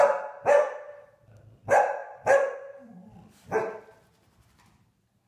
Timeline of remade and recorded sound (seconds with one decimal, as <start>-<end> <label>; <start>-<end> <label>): 0.0-5.3 recorded